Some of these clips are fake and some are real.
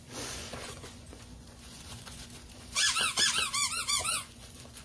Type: fake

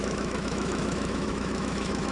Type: fake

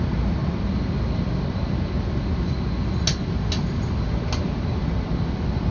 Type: real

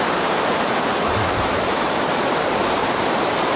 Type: fake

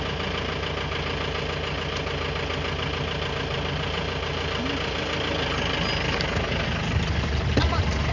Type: real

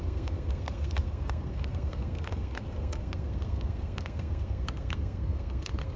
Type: fake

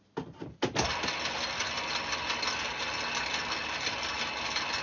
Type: real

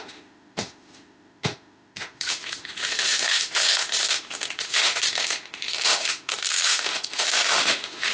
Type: fake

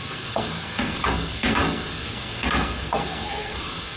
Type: fake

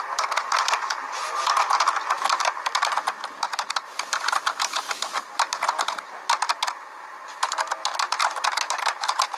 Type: real